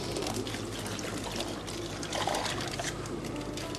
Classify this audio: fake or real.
real